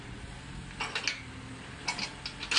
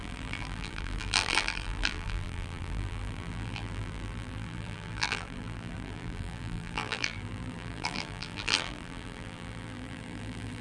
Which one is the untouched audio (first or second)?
first